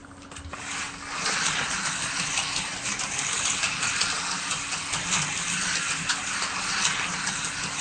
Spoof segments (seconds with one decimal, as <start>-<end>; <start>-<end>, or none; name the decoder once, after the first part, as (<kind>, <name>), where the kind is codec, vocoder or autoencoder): none